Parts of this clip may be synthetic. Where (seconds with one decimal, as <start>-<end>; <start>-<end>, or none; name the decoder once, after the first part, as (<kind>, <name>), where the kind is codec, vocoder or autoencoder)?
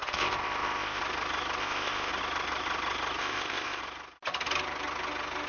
0.0-1.0 (codec, ZipCodec); 1.6-2.1; 3.2-3.8